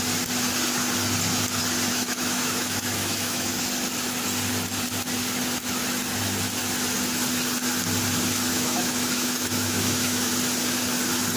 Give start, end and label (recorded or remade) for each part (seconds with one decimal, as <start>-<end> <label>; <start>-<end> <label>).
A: 0.0-1.9 recorded; 1.9-3.5 remade; 3.5-8.5 recorded; 8.5-10.3 remade; 10.3-11.4 recorded